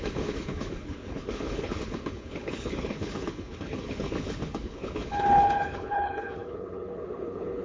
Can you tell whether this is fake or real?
fake